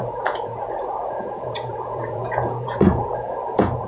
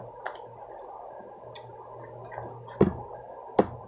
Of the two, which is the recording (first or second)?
second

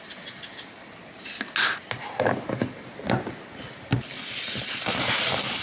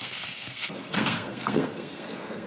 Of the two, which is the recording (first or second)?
first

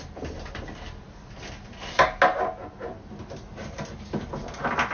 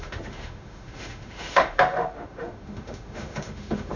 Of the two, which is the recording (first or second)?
first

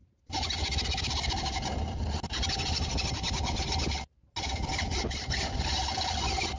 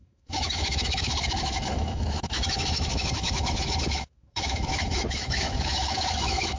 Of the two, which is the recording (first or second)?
first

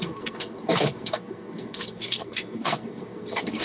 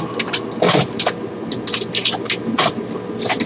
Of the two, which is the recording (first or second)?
second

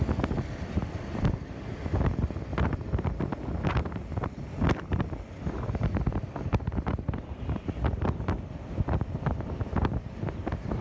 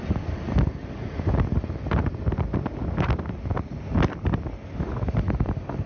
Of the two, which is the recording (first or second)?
second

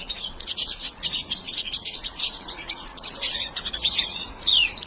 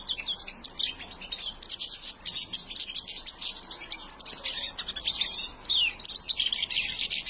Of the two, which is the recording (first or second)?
second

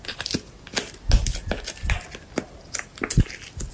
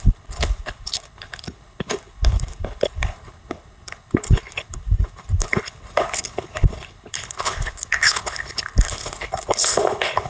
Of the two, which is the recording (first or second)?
first